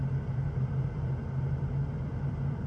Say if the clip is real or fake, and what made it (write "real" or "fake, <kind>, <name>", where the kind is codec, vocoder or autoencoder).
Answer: real